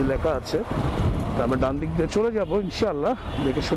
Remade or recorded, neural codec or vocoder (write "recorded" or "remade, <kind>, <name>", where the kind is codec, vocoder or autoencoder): recorded